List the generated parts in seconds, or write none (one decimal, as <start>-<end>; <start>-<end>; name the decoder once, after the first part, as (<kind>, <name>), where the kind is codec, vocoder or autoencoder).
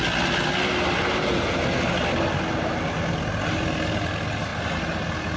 none